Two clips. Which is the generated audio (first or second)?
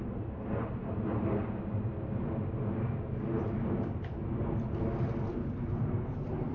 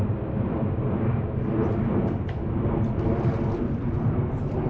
second